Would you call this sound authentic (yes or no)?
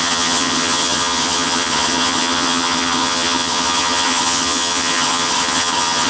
no